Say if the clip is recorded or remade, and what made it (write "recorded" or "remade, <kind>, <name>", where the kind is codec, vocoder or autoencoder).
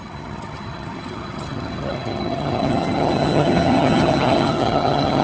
remade, vocoder, HiFi-GAN